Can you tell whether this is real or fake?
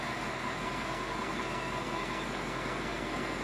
fake